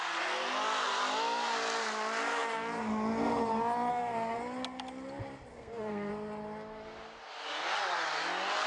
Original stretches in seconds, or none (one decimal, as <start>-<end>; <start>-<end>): 0.0-3.9; 4.4-5.5; 6.1-8.7